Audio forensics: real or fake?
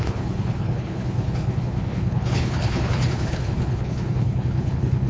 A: fake